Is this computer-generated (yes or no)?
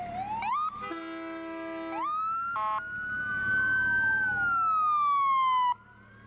no